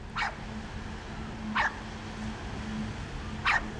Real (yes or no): yes